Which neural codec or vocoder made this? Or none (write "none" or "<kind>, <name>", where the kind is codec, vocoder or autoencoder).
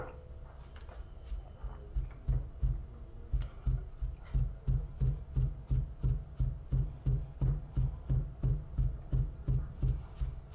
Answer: none